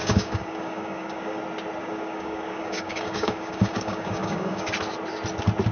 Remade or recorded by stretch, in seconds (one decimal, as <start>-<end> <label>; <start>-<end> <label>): 0.0-1.4 remade; 1.4-1.8 recorded; 1.8-4.7 remade; 4.7-5.7 recorded